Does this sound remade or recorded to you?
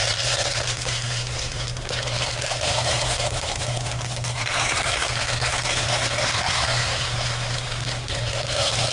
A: remade